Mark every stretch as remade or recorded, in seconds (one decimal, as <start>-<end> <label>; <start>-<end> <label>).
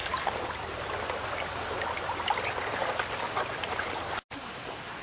0.0-5.0 recorded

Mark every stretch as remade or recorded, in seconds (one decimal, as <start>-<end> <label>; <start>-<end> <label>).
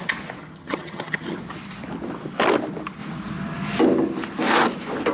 0.0-0.4 recorded; 0.4-1.4 remade; 1.4-5.1 recorded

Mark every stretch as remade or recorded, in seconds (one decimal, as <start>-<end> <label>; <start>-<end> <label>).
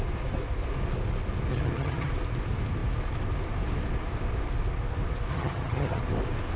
0.0-1.5 recorded; 1.5-2.1 remade; 2.1-5.3 recorded; 5.3-6.0 remade; 6.0-6.6 recorded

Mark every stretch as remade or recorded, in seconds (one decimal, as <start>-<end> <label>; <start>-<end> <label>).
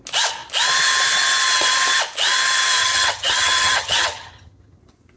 0.0-2.8 recorded; 2.8-4.8 remade; 4.8-5.2 recorded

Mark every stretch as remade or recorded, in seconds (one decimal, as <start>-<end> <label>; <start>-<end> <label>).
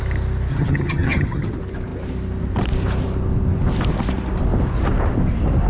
0.0-0.5 recorded; 0.5-1.5 remade; 1.5-5.7 recorded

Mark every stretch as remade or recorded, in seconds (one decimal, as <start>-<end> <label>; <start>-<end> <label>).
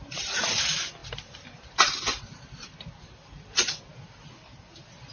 0.0-5.1 recorded